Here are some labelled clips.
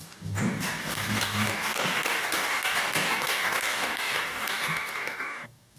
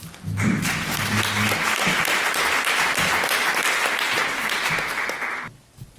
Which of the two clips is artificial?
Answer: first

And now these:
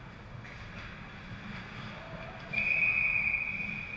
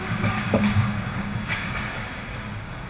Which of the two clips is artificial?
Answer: second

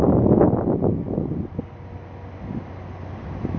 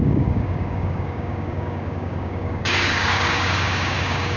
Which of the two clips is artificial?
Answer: second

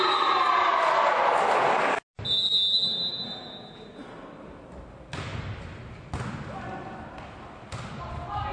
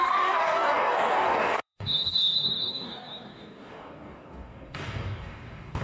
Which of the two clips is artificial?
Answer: second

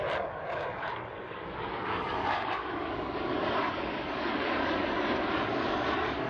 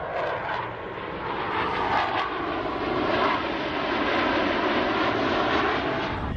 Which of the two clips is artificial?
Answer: first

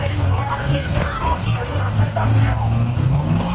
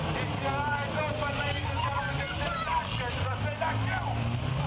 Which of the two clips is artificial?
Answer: first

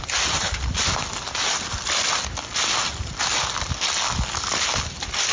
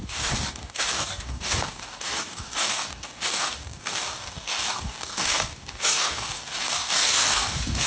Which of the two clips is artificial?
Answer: second